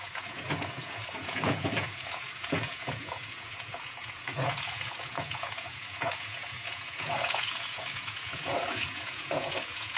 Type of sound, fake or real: fake